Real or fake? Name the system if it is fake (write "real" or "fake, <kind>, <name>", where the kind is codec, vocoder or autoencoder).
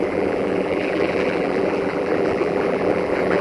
fake, vocoder, BigVGAN v2